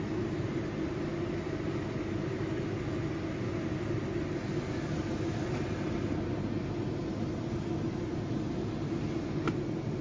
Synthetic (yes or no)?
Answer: no